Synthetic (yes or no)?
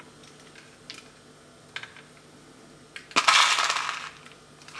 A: no